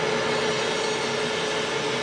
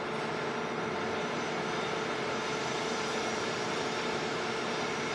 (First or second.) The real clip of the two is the first